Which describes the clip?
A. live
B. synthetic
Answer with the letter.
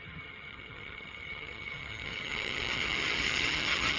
B